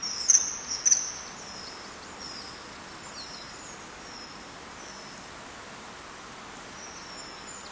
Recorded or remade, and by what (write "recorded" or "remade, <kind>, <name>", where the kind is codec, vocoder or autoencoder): recorded